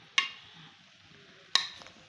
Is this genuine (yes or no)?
yes